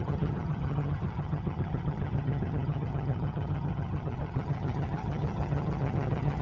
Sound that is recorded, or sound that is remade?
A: remade